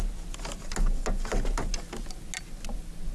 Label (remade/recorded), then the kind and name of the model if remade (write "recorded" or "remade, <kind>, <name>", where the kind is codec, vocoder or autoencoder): recorded